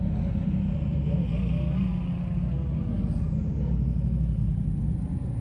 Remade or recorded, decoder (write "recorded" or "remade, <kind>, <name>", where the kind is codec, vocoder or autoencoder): recorded